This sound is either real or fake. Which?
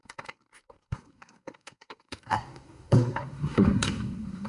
fake